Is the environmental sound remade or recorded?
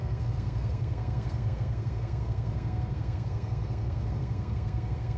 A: remade